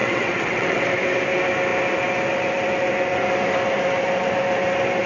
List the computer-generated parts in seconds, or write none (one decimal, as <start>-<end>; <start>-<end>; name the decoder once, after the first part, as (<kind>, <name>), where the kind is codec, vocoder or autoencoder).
0.0-0.9 (vocoder, WaveNeXt)